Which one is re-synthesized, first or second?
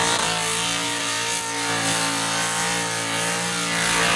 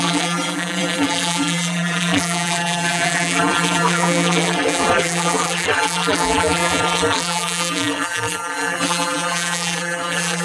second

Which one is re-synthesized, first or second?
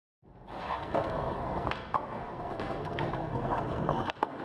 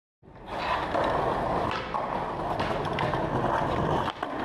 first